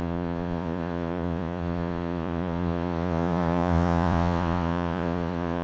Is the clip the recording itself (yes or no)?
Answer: no